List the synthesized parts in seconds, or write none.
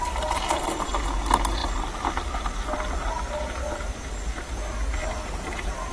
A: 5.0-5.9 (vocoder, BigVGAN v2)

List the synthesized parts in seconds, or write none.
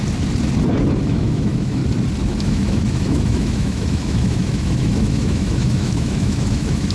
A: 1.0-1.8 (autoencoder, DAC-VAE); 2.4-6.9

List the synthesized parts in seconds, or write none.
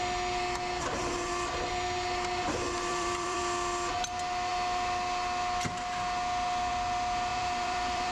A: 2.9-3.4 (vocoder, BigVGAN v2); 7.3-8.1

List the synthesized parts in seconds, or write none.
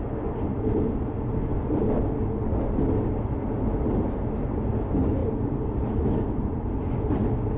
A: 5.2-6.1 (vocoder, BigVGAN v2)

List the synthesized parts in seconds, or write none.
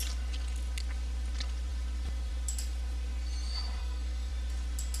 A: 3.8-4.3 (codec, SNAC)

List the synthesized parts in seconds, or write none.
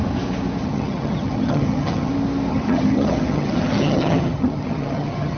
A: 0.6-2.1 (vocoder, HiFi-GAN); 2.5-5.4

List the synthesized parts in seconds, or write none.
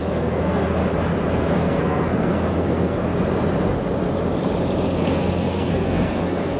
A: 0.0-0.8 (codec, SNAC); 1.3-3.1; 5.1-6.6